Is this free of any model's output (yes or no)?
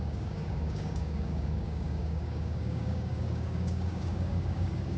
no